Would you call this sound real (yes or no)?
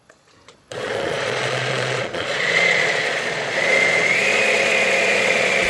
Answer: no